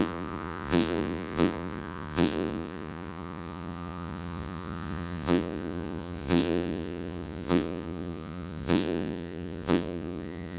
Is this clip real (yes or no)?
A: no